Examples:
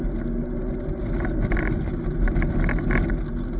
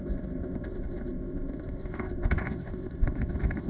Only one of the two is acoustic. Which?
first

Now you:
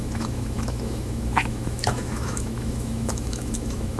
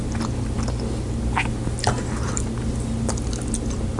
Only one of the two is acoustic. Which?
second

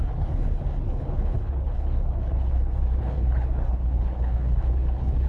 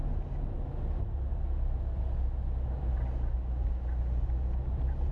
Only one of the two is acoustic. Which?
second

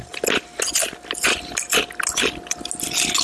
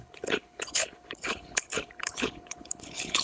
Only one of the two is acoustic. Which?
first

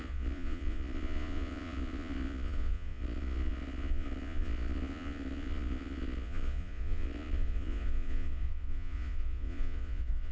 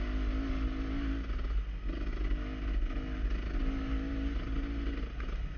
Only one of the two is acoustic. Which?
second